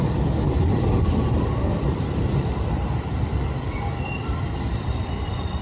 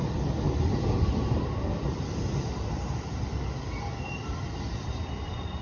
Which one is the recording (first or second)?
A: second